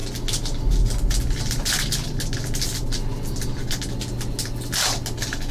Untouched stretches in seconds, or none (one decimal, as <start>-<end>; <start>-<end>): 0.0-5.5